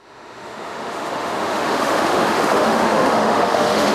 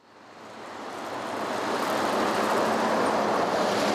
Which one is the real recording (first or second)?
second